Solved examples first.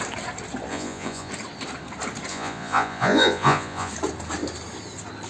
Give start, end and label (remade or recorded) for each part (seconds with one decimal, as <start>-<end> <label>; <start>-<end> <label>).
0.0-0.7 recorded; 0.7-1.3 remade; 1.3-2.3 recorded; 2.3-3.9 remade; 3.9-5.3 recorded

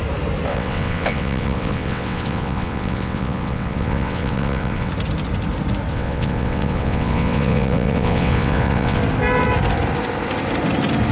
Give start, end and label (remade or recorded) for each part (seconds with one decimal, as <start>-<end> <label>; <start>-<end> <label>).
0.0-0.5 recorded; 0.5-4.9 remade; 4.9-5.9 recorded; 5.9-9.0 remade; 9.0-11.1 recorded

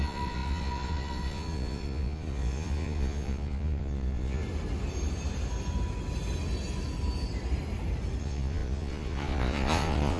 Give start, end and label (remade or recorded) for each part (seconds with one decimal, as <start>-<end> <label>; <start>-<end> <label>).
0.0-4.4 remade; 4.4-8.2 recorded; 8.2-10.2 remade

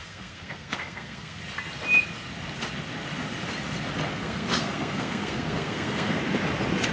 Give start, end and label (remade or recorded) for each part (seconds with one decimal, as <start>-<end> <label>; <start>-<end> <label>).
0.0-1.4 remade; 1.4-4.1 recorded; 4.1-6.2 remade; 6.2-6.9 recorded